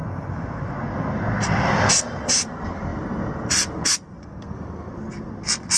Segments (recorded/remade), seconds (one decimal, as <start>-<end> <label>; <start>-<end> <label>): 0.0-4.2 recorded; 4.2-4.9 remade; 4.9-5.8 recorded